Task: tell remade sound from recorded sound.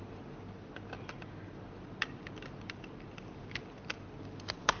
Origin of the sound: recorded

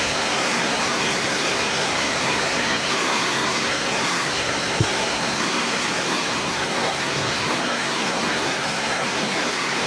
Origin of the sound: remade